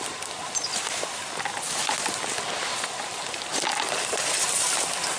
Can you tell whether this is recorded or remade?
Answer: recorded